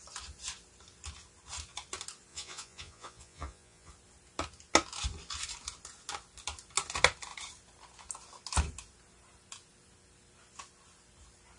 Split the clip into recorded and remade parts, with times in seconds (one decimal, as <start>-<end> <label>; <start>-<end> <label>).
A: 0.0-2.3 recorded; 2.3-3.9 remade; 3.9-11.6 recorded